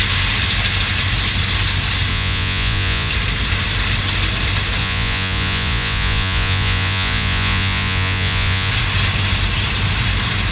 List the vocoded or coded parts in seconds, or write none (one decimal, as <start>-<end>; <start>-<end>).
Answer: 2.1-3.1; 4.8-8.7